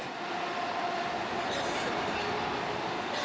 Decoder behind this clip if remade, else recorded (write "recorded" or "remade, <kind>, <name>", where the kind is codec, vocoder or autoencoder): recorded